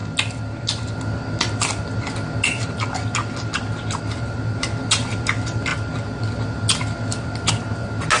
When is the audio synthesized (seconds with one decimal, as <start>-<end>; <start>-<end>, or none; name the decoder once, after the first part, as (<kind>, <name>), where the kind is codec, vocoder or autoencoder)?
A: none